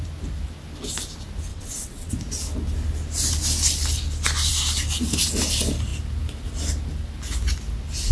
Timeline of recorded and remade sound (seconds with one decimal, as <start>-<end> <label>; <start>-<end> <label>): 0.0-1.5 recorded; 1.5-2.1 remade; 2.1-8.1 recorded